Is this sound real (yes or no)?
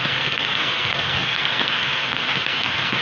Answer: no